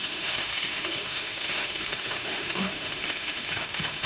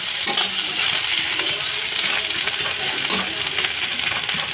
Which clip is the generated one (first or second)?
first